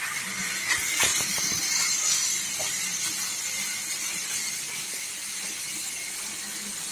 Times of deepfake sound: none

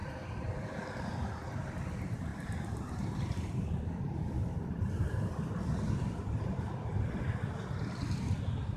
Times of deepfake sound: 0.0-1.1 (vocoder, BigVGAN v2)

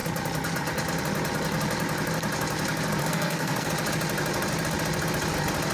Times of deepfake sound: 3.0-3.7 (codec, SNAC)

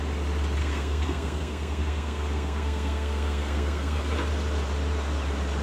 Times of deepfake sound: 0.6-4.0 (codec, SNAC)